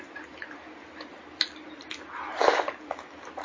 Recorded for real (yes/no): yes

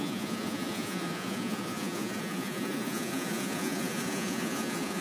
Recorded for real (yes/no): no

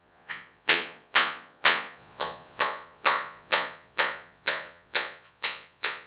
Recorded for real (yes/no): no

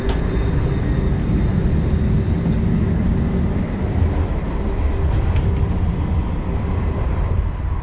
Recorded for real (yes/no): yes